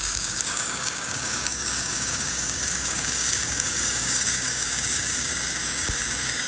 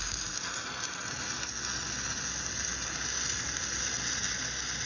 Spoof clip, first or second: first